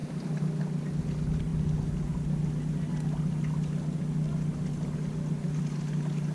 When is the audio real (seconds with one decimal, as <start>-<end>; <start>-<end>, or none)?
0.0-6.3